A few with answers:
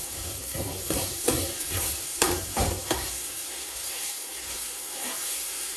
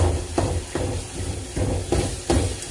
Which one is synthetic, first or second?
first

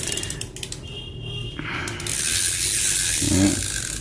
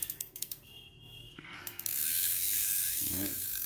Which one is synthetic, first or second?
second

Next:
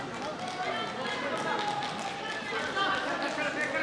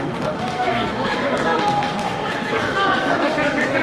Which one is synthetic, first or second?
second